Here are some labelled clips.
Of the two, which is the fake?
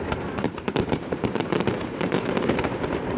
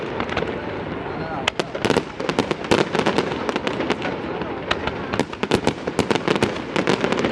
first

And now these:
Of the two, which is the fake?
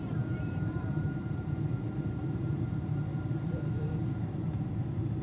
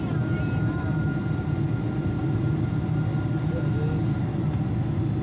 first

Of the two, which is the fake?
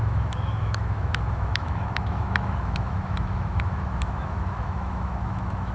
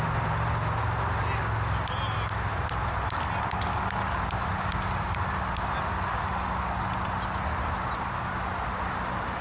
first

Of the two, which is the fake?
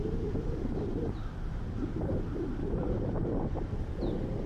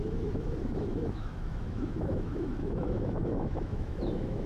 second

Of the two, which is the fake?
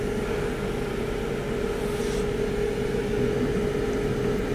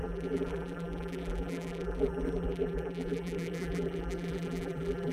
second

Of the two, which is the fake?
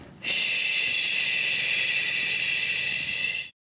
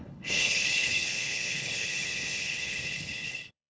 second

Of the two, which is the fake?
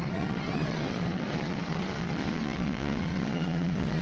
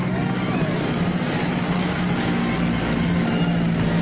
first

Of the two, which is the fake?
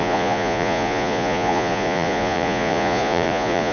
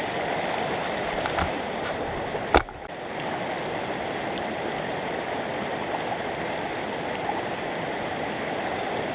first